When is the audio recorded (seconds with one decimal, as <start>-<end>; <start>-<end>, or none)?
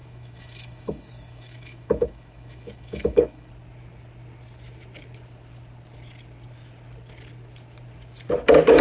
3.5-8.8